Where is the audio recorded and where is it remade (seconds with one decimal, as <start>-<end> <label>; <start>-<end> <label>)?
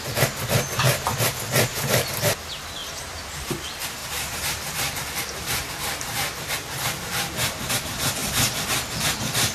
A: 0.0-1.7 recorded; 1.7-2.2 remade; 2.2-2.8 recorded; 2.8-3.5 remade; 3.5-4.0 recorded; 4.0-7.7 remade; 7.7-9.5 recorded